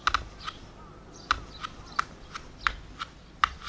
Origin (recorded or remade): recorded